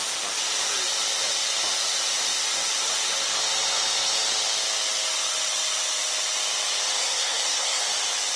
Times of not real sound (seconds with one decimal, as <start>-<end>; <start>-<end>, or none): 7.0-7.8